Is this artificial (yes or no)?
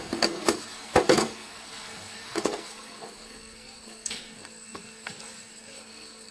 yes